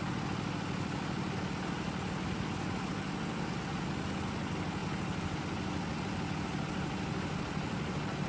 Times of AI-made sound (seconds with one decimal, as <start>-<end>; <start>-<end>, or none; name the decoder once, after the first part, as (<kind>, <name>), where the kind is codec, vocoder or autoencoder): none